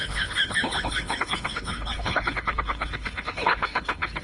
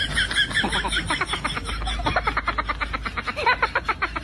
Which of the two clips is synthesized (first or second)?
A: first